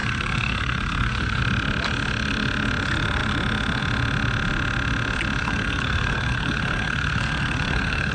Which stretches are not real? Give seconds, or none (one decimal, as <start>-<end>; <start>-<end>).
0.0-1.4; 5.4-8.1